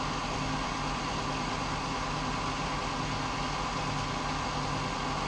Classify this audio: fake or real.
real